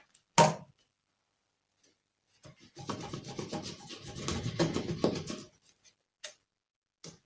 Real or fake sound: real